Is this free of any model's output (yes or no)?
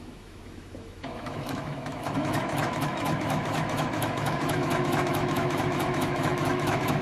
no